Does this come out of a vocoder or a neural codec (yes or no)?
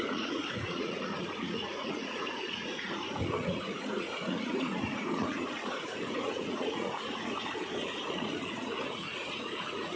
yes